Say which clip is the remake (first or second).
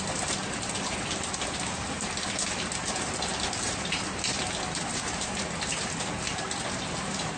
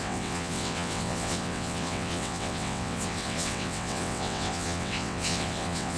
second